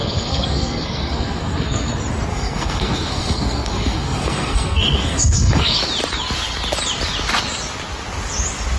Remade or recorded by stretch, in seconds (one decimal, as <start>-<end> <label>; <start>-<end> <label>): 0.0-1.9 remade; 1.9-2.3 recorded; 2.3-5.8 remade; 5.8-8.8 recorded

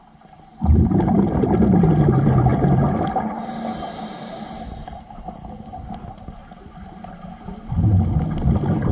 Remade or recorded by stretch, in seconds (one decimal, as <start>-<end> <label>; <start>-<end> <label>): 0.0-8.9 recorded

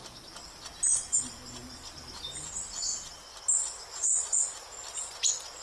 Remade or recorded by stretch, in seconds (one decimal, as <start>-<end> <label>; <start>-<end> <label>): 0.0-5.6 recorded